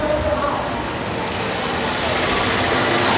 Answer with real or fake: real